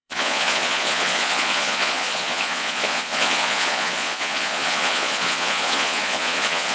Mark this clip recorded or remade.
remade